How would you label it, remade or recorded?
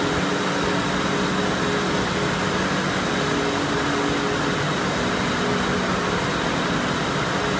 recorded